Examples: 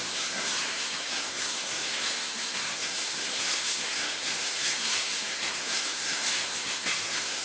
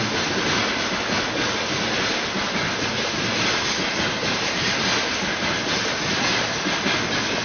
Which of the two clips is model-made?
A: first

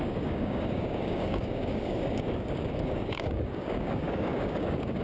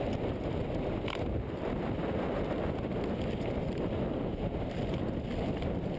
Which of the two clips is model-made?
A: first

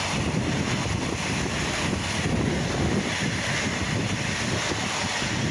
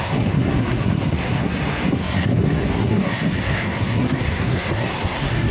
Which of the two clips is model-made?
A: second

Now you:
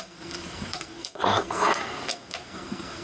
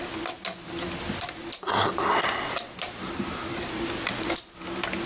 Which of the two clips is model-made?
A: first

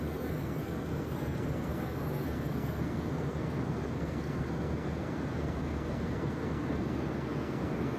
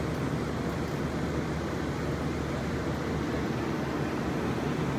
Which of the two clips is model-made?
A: first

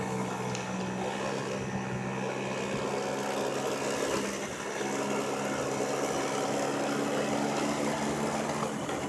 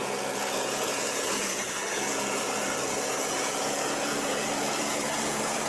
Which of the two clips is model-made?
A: second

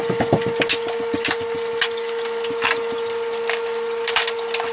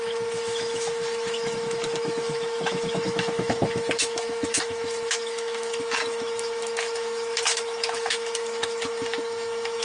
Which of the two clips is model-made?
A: second